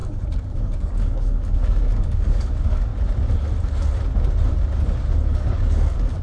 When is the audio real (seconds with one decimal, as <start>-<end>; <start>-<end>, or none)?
2.9-5.3